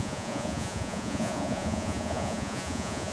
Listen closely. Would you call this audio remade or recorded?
remade